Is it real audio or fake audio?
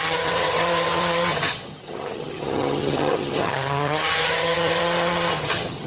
fake